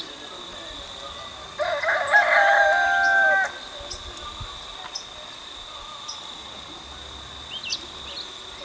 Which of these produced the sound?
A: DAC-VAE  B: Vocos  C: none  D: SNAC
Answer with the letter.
C